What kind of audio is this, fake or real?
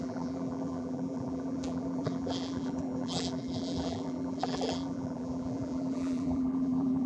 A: fake